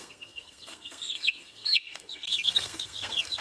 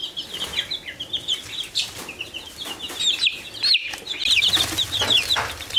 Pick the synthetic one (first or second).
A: first